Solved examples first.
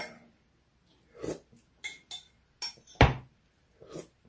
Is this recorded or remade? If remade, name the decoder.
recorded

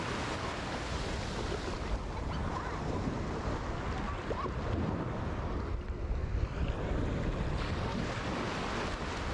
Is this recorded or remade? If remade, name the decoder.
recorded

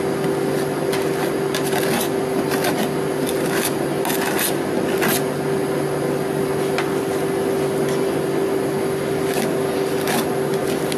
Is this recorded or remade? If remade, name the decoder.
recorded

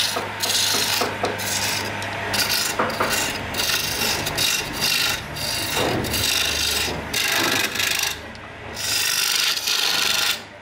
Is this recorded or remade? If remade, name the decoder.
recorded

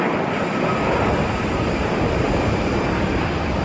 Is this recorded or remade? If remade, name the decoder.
recorded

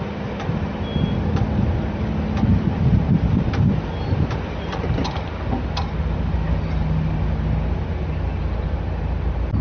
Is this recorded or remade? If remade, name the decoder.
recorded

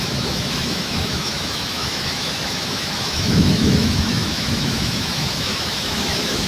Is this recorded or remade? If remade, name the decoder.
remade, autoencoder, DAC-VAE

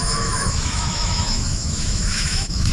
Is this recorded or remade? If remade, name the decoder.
remade, autoencoder, DAC-VAE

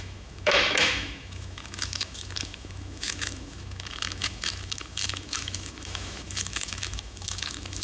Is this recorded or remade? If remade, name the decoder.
remade, autoencoder, DAC-VAE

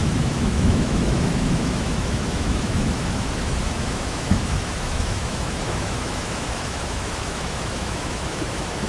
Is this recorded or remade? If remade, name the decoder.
remade, autoencoder, DAC-VAE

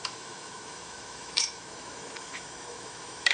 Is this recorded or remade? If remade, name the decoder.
remade, autoencoder, DAC-VAE